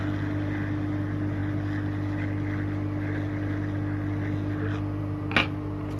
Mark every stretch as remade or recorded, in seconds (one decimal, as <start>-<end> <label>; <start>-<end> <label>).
0.0-6.0 recorded